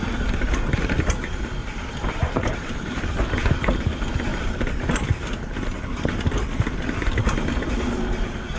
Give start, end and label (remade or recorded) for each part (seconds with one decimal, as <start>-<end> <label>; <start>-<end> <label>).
0.0-1.6 recorded; 1.6-3.3 remade; 3.3-4.3 recorded; 4.3-5.3 remade; 5.3-8.6 recorded